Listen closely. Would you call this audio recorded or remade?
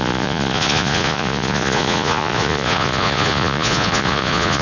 remade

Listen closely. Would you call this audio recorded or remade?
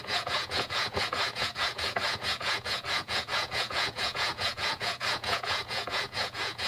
remade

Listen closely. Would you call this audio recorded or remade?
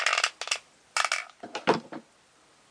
recorded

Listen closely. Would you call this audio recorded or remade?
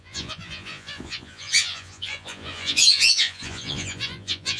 remade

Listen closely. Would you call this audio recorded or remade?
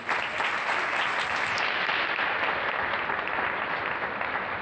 recorded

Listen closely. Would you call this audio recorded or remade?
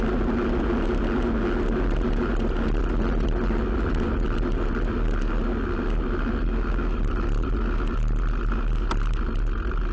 recorded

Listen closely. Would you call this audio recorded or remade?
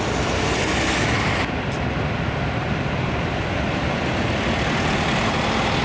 recorded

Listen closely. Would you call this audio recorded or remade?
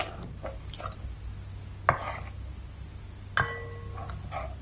recorded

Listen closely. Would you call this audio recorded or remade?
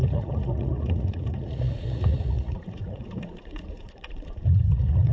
remade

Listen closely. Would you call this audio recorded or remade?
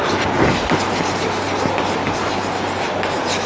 recorded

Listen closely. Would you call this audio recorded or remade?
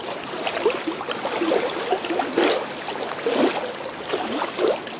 recorded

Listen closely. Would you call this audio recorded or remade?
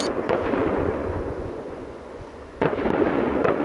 remade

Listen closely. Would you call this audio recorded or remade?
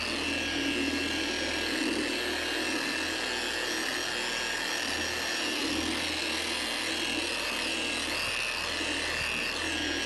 recorded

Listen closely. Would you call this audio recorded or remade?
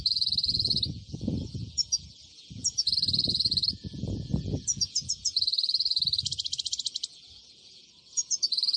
remade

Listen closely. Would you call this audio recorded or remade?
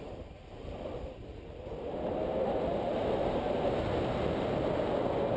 recorded